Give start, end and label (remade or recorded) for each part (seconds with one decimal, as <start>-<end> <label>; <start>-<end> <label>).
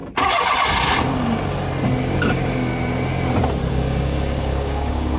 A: 0.0-2.0 recorded; 2.0-2.7 remade; 2.7-3.7 recorded; 3.7-5.2 remade